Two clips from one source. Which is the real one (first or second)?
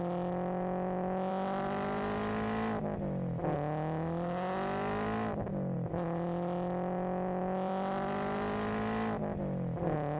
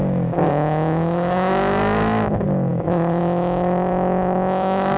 first